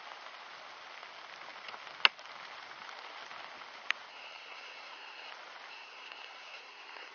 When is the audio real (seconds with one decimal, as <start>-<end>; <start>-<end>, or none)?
0.0-4.1; 5.3-5.7